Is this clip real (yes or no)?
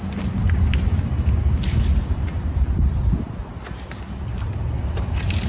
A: yes